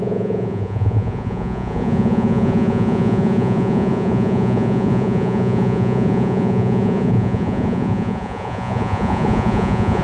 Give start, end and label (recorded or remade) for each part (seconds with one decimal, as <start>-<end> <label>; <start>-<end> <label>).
0.0-10.0 remade